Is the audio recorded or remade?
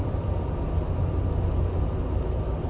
recorded